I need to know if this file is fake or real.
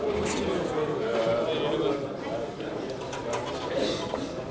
real